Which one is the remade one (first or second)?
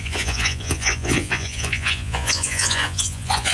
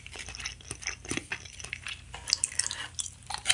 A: first